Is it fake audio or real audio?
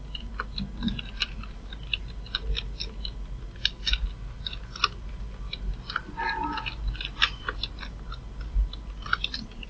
real